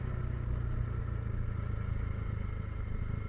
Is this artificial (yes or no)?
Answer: no